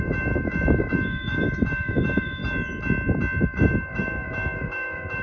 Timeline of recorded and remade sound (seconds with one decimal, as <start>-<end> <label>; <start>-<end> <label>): 0.0-2.4 remade; 2.4-3.4 recorded; 3.4-5.2 remade